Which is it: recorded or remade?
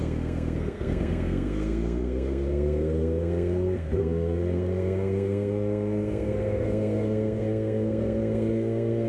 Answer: remade